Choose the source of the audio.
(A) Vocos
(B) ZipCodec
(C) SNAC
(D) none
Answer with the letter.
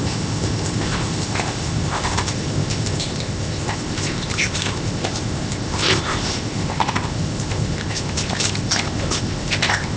B